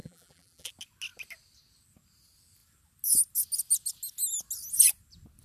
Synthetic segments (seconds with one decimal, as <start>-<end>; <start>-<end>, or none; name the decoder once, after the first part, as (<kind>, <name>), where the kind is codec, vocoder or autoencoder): 0.0-0.7 (vocoder, BigVGAN v2)